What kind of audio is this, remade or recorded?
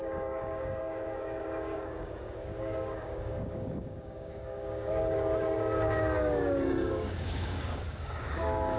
remade